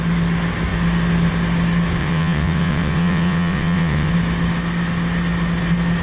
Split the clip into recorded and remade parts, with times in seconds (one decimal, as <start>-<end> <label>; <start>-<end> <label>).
0.0-2.0 recorded; 2.0-4.1 remade; 4.1-6.0 recorded